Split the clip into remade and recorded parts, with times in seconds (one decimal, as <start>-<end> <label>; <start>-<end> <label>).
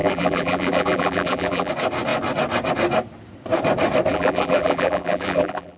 0.0-1.7 remade; 1.7-4.1 recorded; 4.1-5.8 remade